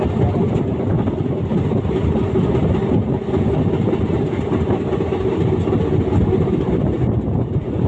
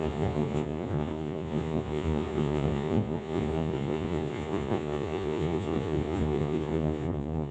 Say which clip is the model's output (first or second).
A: second